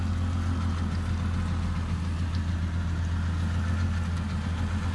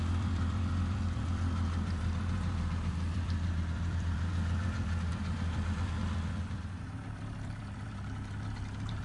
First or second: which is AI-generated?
second